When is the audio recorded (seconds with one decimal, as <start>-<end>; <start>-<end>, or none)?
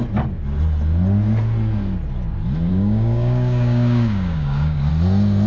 0.0-2.7; 4.9-5.5